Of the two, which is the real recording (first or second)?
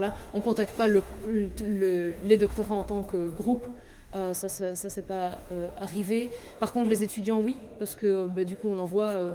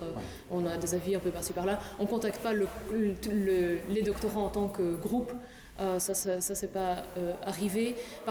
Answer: second